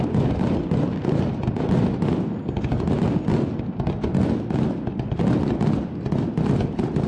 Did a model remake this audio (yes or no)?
no